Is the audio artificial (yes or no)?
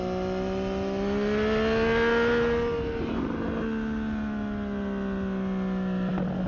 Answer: no